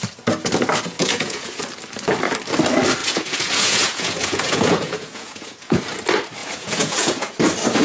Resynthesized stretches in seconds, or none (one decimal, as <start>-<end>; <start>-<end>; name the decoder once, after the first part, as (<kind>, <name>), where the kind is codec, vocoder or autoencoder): 1.0-1.6 (vocoder, Vocos); 3.0-5.8; 6.4-7.3